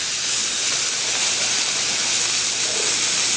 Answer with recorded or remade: recorded